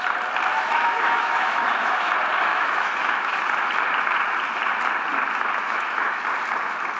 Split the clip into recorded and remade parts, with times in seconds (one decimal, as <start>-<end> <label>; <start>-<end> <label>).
0.0-0.5 recorded; 0.5-2.1 remade; 2.1-2.5 recorded; 2.5-3.4 remade; 3.4-5.6 recorded; 5.6-6.2 remade; 6.2-7.0 recorded